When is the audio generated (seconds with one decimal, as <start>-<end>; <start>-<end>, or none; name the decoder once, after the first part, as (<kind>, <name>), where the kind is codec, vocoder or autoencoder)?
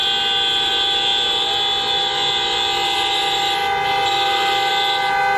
none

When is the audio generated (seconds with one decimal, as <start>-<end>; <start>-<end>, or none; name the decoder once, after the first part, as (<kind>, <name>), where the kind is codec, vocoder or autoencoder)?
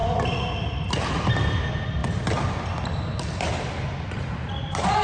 none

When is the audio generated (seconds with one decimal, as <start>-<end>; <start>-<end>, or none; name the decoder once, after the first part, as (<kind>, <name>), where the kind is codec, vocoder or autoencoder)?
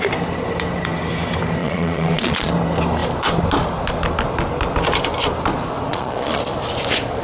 1.6-2.5 (vocoder, Vocos); 5.9-6.4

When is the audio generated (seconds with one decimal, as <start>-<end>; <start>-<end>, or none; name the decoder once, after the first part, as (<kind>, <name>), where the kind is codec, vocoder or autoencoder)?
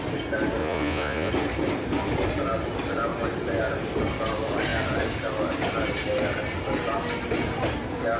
0.6-1.3 (vocoder, Vocos)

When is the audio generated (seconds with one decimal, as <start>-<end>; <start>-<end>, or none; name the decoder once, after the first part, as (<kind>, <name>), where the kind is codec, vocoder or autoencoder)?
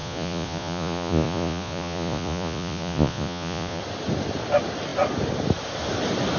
0.0-3.8 (vocoder, Vocos)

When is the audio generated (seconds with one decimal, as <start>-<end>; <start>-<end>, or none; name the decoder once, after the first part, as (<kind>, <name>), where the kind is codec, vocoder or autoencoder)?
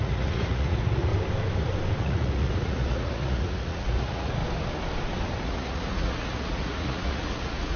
0.0-1.1 (vocoder, Vocos); 2.0-4.4; 5.4-7.8